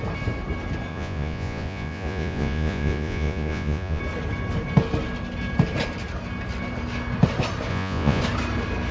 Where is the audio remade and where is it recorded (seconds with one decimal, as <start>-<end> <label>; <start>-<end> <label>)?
0.0-0.9 recorded; 0.9-4.0 remade; 4.0-7.7 recorded; 7.7-8.2 remade; 8.2-8.9 recorded